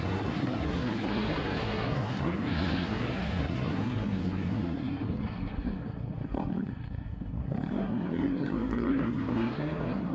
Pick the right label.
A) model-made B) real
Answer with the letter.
A